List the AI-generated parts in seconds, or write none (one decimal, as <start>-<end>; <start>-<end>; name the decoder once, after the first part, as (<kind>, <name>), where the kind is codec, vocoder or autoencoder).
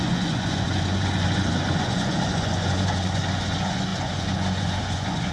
0.0-5.3 (vocoder, Vocos)